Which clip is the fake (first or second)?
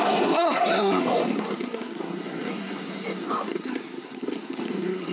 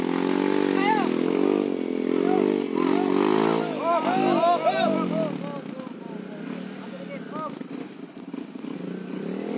first